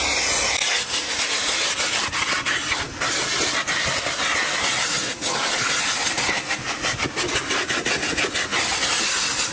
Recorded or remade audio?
recorded